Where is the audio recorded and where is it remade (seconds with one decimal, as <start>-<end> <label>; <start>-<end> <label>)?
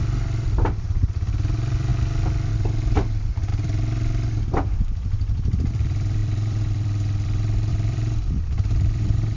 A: 0.0-1.9 remade; 1.9-2.5 recorded; 2.5-9.4 remade